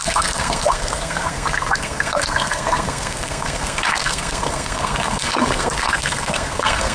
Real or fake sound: fake